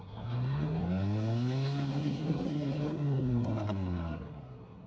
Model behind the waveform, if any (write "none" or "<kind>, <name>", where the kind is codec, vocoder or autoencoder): codec, SNAC